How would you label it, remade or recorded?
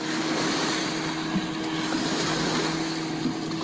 recorded